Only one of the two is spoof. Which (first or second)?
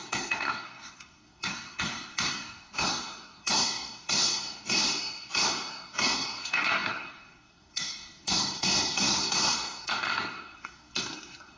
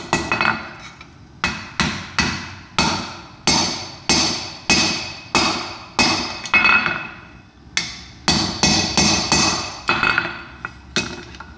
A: first